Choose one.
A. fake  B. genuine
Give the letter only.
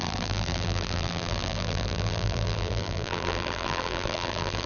A